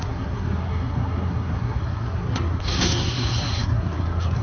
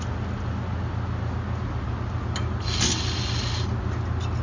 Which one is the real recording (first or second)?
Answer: second